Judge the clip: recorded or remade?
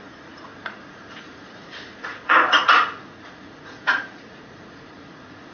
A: remade